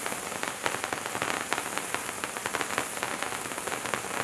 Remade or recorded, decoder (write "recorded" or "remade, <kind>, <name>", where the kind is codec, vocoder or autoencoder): recorded